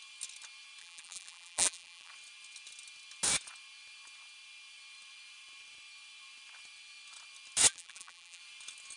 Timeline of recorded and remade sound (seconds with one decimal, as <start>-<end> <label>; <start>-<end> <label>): 0.0-0.8 recorded; 0.8-2.1 remade; 2.1-7.7 recorded; 7.7-8.4 remade; 8.4-9.0 recorded